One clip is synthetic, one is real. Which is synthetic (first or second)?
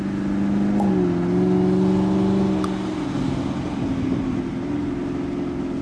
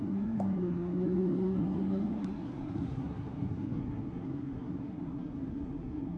second